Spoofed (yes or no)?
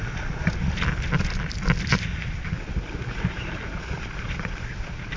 no